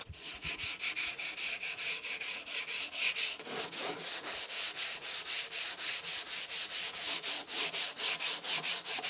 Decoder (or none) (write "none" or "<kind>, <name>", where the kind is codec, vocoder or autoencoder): vocoder, Vocos